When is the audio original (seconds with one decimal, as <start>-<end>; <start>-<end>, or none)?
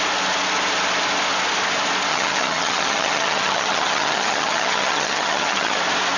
0.0-2.1; 5.8-6.2